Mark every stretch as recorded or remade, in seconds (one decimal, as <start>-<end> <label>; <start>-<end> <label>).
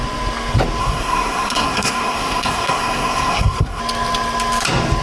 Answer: 0.0-0.8 recorded; 0.8-3.8 remade; 3.8-5.0 recorded